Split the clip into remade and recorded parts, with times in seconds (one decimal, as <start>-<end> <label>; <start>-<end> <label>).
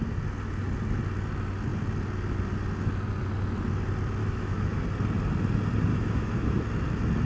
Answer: 0.0-4.2 recorded; 4.2-4.8 remade; 4.8-5.9 recorded; 5.9-6.6 remade; 6.6-7.3 recorded